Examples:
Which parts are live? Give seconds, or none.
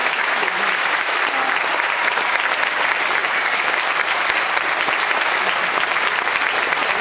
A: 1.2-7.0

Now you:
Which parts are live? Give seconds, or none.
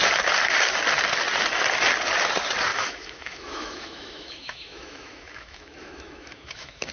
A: 0.0-2.7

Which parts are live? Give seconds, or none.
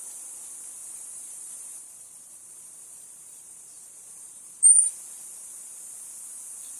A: 0.0-0.8; 4.9-6.8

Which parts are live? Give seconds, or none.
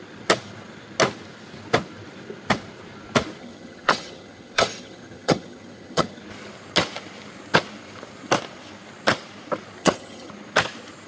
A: 0.0-3.4; 6.2-9.8; 10.3-11.1